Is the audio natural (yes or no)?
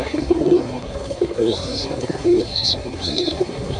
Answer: no